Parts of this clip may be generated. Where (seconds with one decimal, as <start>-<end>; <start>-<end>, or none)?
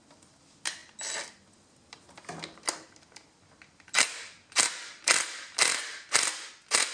none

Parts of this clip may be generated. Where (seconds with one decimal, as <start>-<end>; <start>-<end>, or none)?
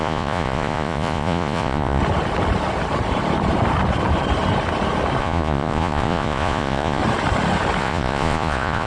0.0-2.0; 5.2-7.0; 7.8-8.9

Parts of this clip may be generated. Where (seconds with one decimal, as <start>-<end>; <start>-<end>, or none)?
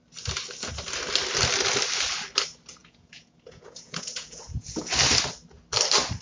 2.8-4.9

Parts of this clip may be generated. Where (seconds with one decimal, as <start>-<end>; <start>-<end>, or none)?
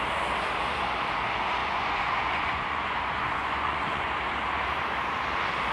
1.6-4.1